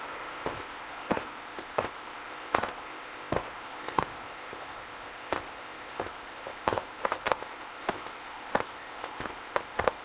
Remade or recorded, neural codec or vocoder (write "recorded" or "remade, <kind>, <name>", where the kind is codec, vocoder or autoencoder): remade, codec, ZipCodec